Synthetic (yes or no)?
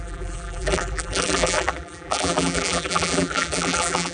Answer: yes